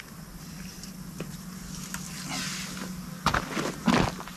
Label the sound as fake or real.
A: real